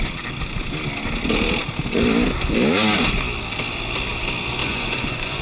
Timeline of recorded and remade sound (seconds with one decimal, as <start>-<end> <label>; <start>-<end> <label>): 0.0-4.6 recorded; 4.6-5.4 remade